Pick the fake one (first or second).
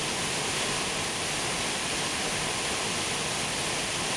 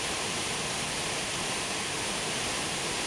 second